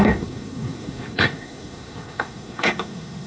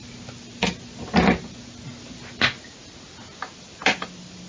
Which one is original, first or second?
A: second